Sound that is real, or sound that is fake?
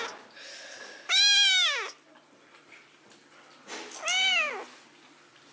real